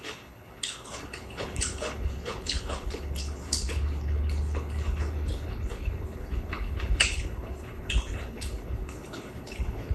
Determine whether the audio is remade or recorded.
remade